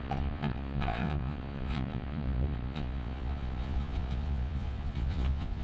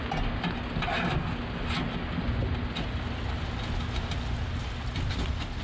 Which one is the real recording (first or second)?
second